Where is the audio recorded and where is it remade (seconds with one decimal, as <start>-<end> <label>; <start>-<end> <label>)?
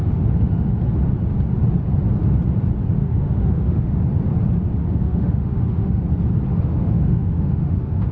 0.0-0.7 remade; 0.7-3.0 recorded; 3.0-4.0 remade; 4.0-4.8 recorded; 4.8-6.0 remade; 6.0-6.5 recorded; 6.5-8.1 remade